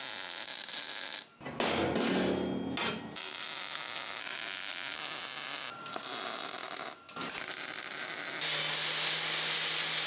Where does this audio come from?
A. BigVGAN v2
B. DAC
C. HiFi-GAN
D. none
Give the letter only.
D